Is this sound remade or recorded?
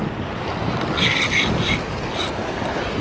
recorded